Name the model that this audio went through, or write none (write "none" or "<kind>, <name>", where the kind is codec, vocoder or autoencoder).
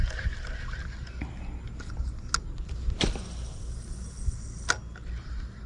none